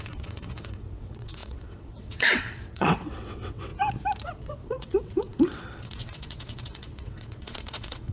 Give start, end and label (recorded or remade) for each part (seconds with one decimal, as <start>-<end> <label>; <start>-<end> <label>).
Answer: 0.0-3.7 remade; 3.7-4.2 recorded; 4.2-8.1 remade